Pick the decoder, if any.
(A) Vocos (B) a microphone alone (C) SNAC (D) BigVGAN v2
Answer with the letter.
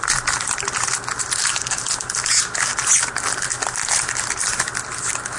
B